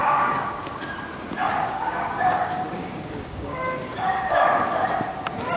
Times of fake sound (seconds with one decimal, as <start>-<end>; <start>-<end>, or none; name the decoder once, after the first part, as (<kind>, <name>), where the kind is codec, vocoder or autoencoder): 0.0-0.7 (codec, DAC); 1.5-4.9